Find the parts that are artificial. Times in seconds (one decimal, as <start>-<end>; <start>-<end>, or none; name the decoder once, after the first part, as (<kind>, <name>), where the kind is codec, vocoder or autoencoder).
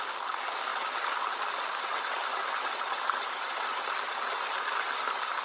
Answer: 0.7-3.9 (vocoder, BigVGAN v2)